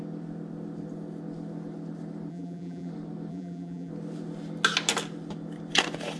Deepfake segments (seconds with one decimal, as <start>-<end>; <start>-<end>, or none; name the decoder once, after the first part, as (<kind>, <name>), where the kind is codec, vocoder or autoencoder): 2.3-2.9 (vocoder, BigVGAN v2); 3.3-3.9

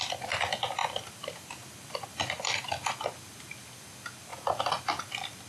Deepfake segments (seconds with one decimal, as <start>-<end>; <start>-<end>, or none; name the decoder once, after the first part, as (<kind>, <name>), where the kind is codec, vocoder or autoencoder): 0.8-3.1 (vocoder, BigVGAN v2)